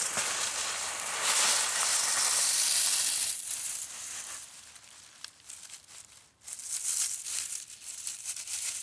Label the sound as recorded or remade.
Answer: recorded